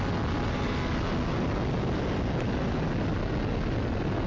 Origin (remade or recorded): recorded